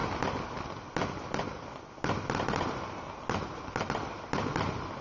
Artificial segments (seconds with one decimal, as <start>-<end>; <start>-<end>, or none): none